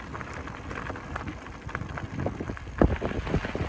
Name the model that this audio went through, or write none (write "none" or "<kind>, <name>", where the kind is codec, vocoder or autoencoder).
none